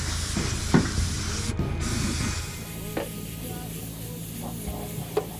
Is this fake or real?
real